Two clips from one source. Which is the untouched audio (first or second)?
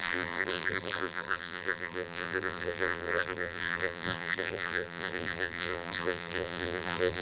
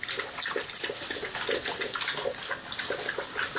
second